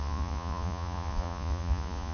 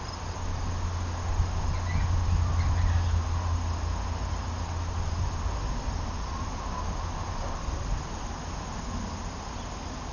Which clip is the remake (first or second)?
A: first